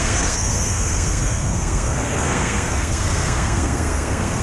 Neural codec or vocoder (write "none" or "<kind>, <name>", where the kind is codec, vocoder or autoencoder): codec, SNAC